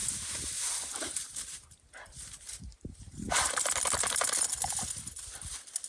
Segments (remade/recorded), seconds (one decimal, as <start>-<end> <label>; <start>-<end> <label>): 0.0-3.5 remade; 3.5-5.9 recorded